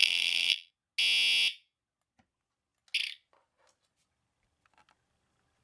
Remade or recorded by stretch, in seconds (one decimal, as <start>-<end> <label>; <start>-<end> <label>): 0.0-0.7 remade; 0.7-5.6 recorded